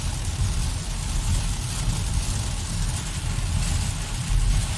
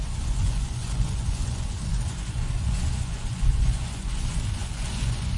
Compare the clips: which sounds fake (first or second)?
second